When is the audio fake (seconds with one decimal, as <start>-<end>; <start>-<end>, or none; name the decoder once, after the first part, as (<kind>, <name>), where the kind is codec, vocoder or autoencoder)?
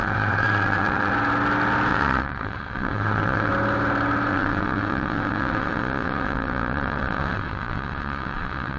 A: 0.0-1.1 (vocoder, WaveNeXt); 1.9-3.5; 4.3-8.8